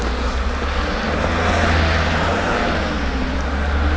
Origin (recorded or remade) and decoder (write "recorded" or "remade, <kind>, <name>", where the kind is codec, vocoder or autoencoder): recorded